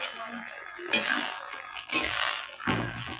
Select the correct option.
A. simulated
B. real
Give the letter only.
A